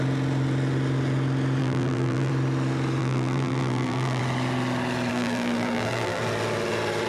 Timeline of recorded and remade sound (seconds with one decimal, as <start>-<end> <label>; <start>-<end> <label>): 0.0-1.6 recorded; 1.6-2.3 remade; 2.3-3.0 recorded; 3.0-4.2 remade; 4.2-5.1 recorded; 5.1-6.2 remade; 6.2-7.1 recorded